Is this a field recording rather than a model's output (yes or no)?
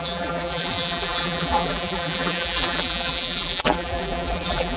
no